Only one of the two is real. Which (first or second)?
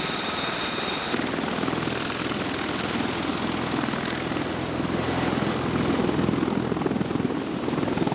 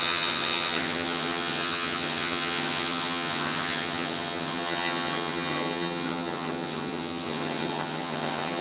first